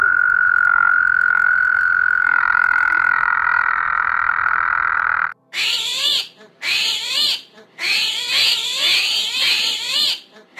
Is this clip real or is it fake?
fake